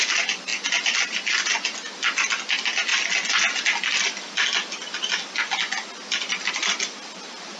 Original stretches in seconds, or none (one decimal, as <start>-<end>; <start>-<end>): 0.0-7.6

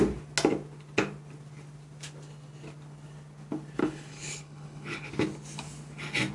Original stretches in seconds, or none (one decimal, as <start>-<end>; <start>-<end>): 0.0-3.8; 5.1-6.3

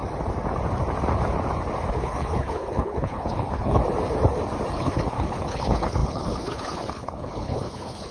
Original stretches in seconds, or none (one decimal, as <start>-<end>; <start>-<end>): 0.0-1.9; 3.8-4.7

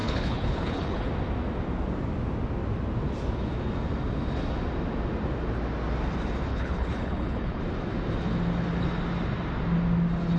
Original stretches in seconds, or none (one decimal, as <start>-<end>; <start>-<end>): 1.1-6.5; 7.6-10.4

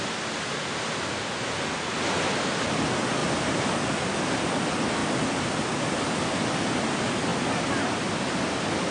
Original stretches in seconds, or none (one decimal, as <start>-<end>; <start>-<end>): 0.0-8.9

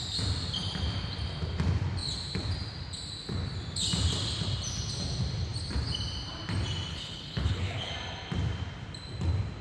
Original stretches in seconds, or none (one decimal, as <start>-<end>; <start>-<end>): 0.0-6.9; 7.9-9.6

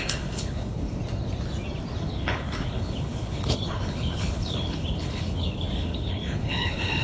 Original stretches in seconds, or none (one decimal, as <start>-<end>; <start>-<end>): 1.0-2.0

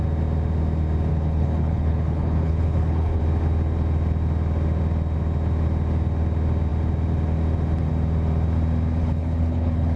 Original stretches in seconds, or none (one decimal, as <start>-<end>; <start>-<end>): 0.0-1.1; 3.2-9.0